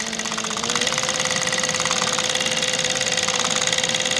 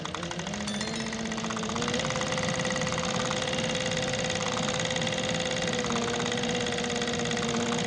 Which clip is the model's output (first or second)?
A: first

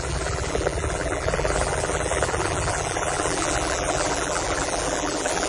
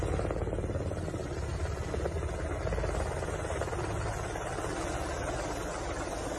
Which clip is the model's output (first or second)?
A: first